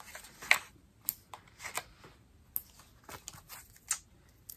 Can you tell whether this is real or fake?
real